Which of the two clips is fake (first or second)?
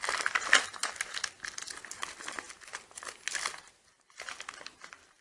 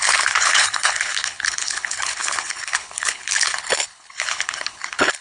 second